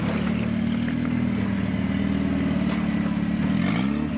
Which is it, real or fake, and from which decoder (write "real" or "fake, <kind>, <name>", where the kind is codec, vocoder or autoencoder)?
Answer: real